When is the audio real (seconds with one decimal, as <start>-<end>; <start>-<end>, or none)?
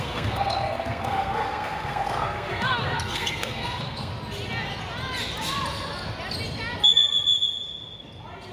4.1-8.5